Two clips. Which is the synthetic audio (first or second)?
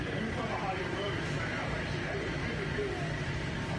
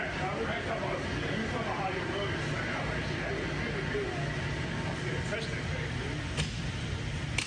first